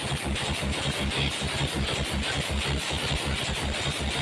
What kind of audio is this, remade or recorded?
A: recorded